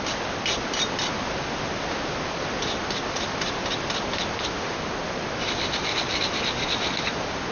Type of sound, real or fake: real